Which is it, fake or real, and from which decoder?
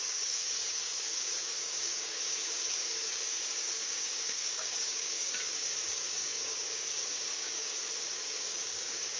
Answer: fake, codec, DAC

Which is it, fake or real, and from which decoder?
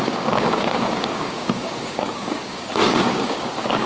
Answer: fake, codec, DAC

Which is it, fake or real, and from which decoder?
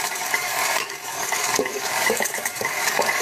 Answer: fake, codec, DAC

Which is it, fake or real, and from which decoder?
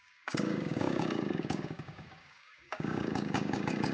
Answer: fake, codec, DAC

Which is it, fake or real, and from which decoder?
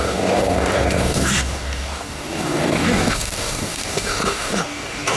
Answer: fake, codec, DAC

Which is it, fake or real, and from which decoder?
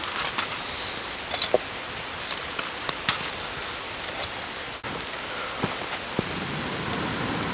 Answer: real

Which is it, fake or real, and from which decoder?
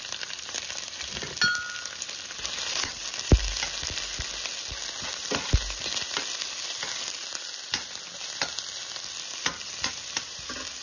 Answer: real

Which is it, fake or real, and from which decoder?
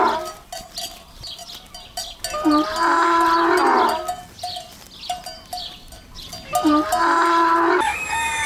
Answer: real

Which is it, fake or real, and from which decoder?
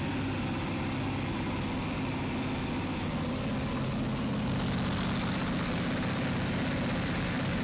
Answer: real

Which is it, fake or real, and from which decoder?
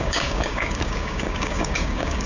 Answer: fake, codec, DAC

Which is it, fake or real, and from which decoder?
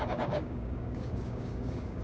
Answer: fake, codec, DAC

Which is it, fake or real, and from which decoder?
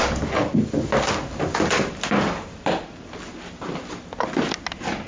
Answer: real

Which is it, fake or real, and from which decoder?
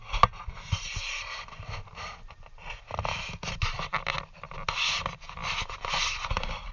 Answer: real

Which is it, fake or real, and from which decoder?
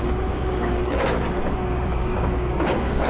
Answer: fake, codec, DAC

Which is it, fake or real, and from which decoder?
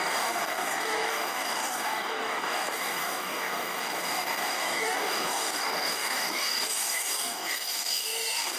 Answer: fake, codec, DAC